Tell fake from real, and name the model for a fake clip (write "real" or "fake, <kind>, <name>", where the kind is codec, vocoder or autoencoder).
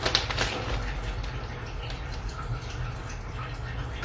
real